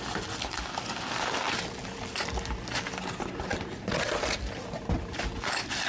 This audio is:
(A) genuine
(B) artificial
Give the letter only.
A